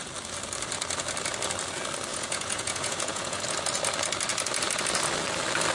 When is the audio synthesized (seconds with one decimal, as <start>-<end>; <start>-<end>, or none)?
2.1-3.4